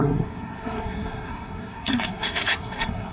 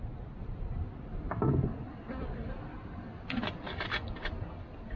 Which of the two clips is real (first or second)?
second